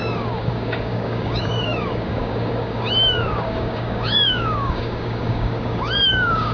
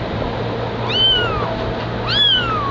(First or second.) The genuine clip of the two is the second